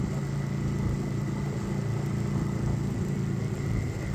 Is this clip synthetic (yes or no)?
no